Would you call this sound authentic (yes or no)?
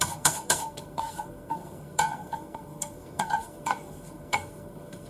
no